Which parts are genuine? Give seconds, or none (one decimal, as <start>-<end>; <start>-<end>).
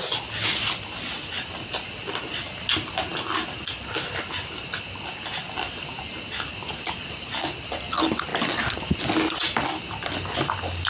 0.0-10.9